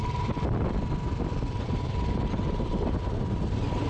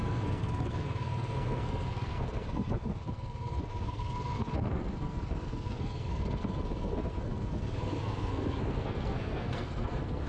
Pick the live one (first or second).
first